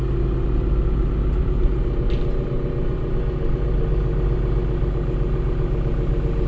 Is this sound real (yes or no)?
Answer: yes